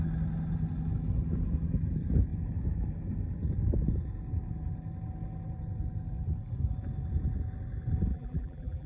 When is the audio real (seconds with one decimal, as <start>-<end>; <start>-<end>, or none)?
0.0-8.1